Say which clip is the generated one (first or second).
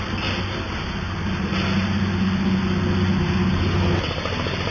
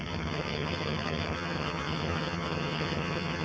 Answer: second